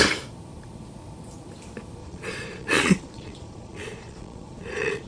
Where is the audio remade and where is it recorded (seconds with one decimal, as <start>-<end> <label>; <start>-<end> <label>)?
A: 0.0-2.0 recorded; 2.0-5.1 remade